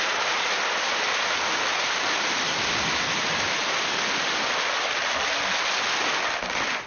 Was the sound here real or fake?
real